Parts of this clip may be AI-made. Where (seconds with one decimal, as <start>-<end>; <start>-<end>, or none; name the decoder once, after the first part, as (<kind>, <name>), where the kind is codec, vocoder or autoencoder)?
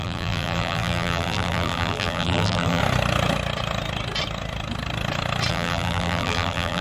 0.0-2.8 (vocoder, BigVGAN v2); 5.5-6.8